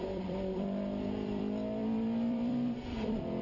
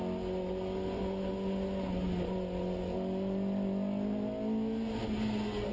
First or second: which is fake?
first